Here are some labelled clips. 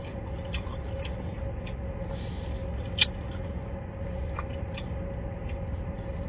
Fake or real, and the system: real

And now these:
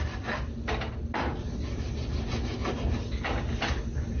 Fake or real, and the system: real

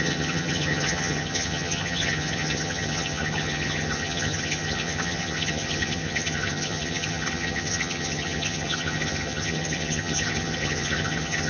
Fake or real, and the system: fake, vocoder, HiFi-GAN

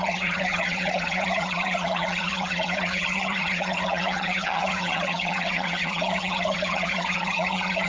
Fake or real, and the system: fake, vocoder, HiFi-GAN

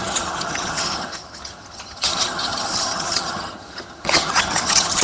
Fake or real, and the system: fake, vocoder, HiFi-GAN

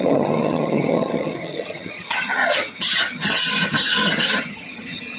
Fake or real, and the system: fake, vocoder, HiFi-GAN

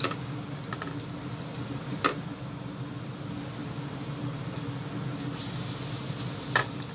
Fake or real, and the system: real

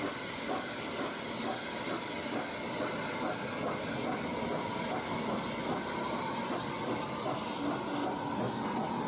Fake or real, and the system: real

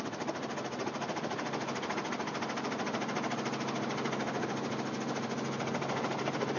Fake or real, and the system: real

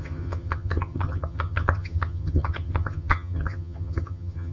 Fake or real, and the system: fake, vocoder, HiFi-GAN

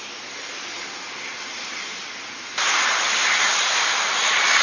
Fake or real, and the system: real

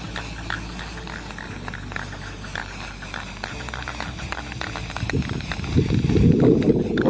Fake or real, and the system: real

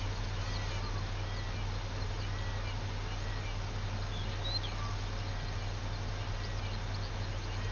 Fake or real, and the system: real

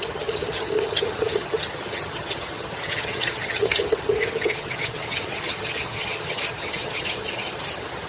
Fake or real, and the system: fake, vocoder, HiFi-GAN